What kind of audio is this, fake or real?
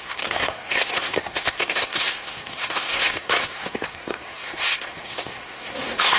fake